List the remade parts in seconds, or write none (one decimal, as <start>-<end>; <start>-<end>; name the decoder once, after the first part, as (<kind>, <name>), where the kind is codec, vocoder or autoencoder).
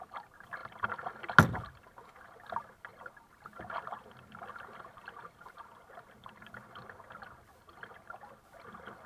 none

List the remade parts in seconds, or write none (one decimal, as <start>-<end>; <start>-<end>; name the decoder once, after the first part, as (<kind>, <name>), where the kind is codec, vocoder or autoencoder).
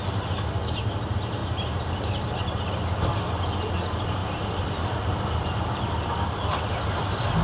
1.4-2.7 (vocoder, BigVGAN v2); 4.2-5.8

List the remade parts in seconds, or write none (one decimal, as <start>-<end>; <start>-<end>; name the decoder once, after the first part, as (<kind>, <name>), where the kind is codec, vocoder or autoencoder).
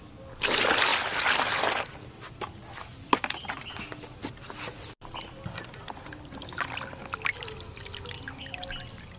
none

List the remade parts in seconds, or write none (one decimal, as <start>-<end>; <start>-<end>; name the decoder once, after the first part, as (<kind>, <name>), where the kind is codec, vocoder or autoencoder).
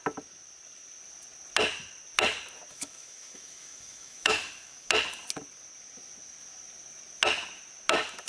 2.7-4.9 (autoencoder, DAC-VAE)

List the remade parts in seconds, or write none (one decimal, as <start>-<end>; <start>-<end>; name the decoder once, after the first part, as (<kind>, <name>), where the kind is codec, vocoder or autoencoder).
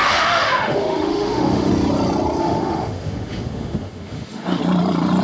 0.0-1.7 (autoencoder, DAC-VAE); 2.4-4.6